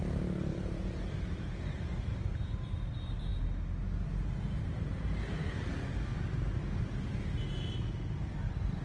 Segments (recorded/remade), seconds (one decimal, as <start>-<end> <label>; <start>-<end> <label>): 0.0-0.5 recorded; 0.5-2.3 remade; 2.3-8.8 recorded